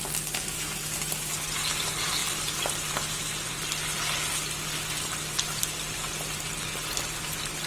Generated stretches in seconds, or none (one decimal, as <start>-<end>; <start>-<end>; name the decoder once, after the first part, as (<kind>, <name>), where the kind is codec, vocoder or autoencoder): none